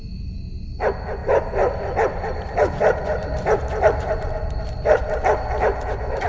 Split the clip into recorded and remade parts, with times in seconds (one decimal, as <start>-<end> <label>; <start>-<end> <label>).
0.0-1.2 recorded; 1.2-5.0 remade; 5.0-6.3 recorded